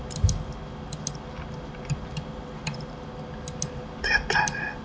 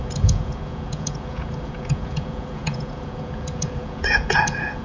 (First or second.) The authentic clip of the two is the first